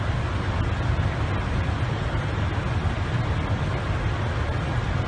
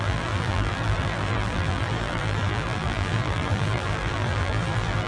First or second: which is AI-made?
second